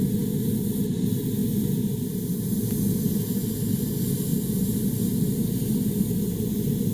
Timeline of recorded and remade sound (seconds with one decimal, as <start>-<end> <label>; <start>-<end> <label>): 0.0-6.9 recorded